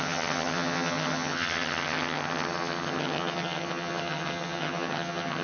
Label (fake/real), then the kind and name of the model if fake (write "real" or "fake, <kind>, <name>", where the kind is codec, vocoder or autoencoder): fake, vocoder, HiFi-GAN